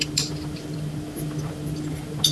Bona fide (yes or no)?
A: yes